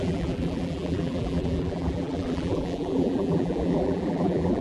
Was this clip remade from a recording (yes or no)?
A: yes